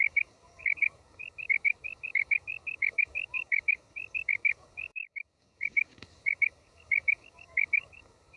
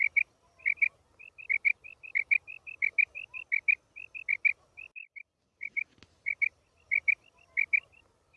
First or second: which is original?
second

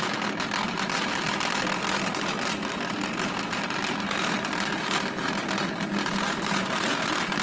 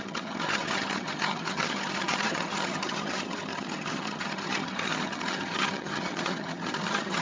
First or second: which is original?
first